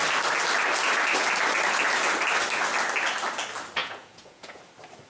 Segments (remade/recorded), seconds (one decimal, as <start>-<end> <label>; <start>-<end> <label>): 0.0-3.8 recorded; 3.8-4.6 remade; 4.6-5.1 recorded